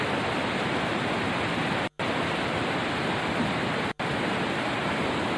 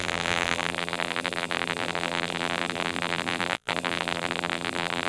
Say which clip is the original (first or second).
first